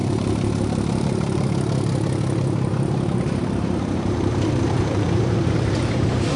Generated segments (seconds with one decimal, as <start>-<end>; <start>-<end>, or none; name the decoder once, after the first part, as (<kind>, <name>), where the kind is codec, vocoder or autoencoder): 0.0-1.5 (vocoder, BigVGAN v2); 2.7-6.4

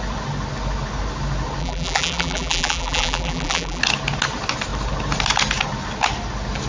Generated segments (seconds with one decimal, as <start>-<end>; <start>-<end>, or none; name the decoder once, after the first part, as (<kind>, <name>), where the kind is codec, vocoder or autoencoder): 1.6-3.8 (vocoder, BigVGAN v2)